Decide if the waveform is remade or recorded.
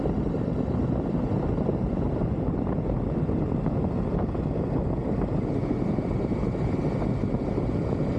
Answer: recorded